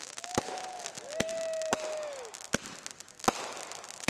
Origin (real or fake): real